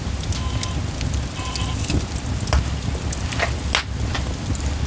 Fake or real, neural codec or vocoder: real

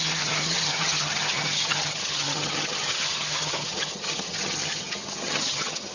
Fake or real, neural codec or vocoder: fake, vocoder, HiFi-GAN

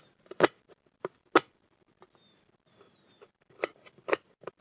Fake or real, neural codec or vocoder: real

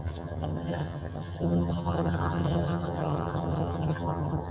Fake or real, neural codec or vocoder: fake, vocoder, HiFi-GAN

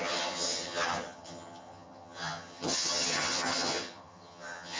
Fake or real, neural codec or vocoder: fake, vocoder, HiFi-GAN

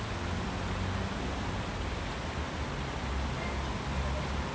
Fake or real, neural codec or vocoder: real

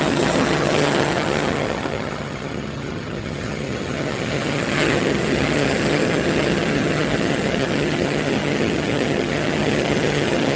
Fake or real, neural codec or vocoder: fake, vocoder, HiFi-GAN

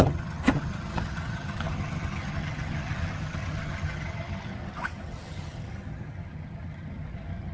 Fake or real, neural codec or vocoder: fake, vocoder, HiFi-GAN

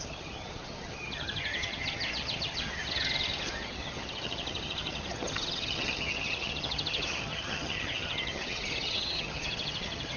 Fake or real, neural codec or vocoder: fake, vocoder, HiFi-GAN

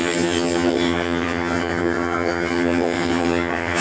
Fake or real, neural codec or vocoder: fake, vocoder, HiFi-GAN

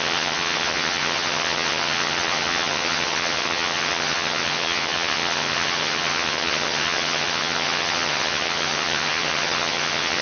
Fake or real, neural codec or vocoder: fake, vocoder, HiFi-GAN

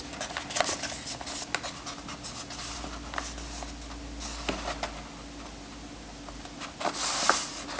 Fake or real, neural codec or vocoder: real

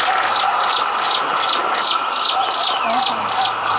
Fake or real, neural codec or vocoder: real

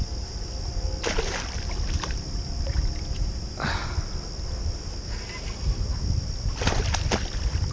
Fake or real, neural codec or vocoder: real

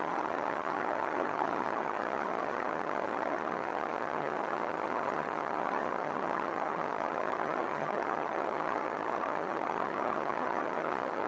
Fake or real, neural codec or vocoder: fake, vocoder, HiFi-GAN